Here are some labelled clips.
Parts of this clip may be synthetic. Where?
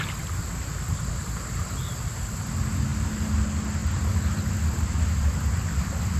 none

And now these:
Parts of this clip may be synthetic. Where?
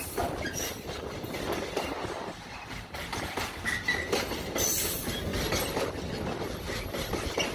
none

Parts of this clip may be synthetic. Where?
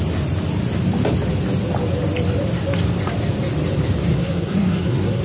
4.1-5.2 (codec, SNAC)